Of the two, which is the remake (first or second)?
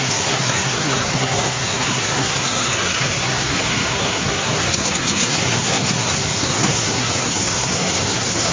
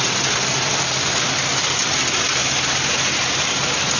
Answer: first